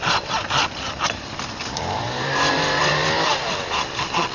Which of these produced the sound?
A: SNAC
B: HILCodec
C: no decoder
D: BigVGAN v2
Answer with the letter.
D